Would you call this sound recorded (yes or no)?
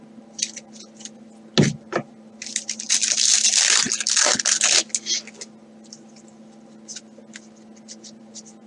yes